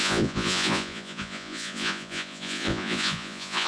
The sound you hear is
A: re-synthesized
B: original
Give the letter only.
A